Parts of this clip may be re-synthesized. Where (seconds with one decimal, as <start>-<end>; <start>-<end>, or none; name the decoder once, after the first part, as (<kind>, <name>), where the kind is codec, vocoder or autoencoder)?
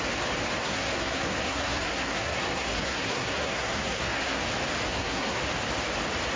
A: 0.6-4.4 (codec, SNAC); 4.9-5.4